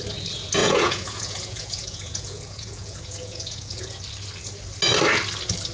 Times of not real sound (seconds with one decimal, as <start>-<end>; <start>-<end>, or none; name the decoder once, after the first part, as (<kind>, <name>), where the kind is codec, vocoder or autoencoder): 0.6-4.0 (vocoder, Vocos)